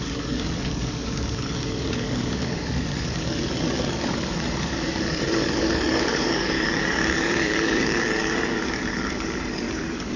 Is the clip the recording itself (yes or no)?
no